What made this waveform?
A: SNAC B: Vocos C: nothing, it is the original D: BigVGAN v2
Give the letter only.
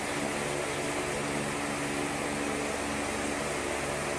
C